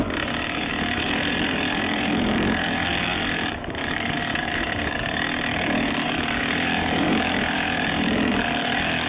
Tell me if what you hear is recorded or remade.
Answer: remade